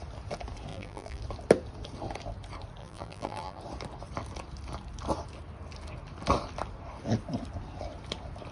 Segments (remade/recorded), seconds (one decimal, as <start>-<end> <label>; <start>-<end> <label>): 0.0-0.7 recorded; 0.7-1.2 remade; 1.2-2.8 recorded; 2.8-3.6 remade; 3.6-8.5 recorded